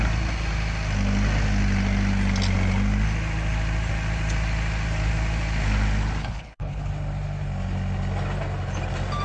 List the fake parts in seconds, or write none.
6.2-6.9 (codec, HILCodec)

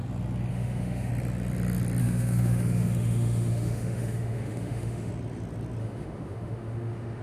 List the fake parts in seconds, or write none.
0.5-1.1 (autoencoder, DAC-VAE); 2.0-5.1; 5.8-7.2

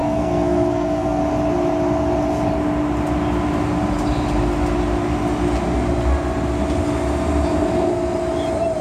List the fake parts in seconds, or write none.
0.0-1.2 (codec, SNAC)

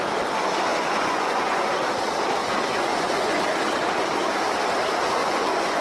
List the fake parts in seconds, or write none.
0.7-1.6 (vocoder, Vocos); 2.4-3.4; 5.2-5.8

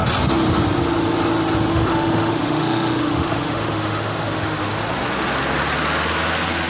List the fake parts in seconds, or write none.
1.7-4.8 (autoencoder, DAC-VAE)

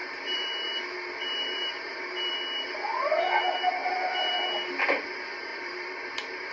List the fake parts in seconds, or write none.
0.0-2.3 (vocoder, BigVGAN v2); 5.5-6.5

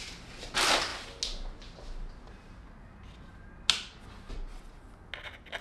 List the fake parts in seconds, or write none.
none

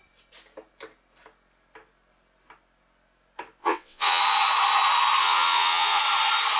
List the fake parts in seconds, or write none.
3.6-4.2 (vocoder, WaveNeXt); 5.2-6.0